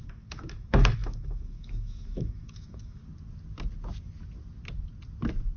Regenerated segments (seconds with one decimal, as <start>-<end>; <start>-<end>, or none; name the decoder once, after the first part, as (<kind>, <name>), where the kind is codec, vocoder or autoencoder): 0.0-3.0 (autoencoder, DAC-VAE)